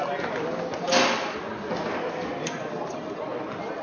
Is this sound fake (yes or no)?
no